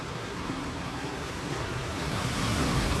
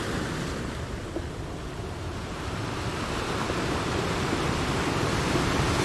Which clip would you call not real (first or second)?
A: first